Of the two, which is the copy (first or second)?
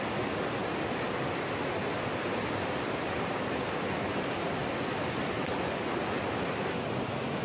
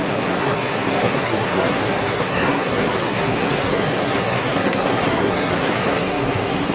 second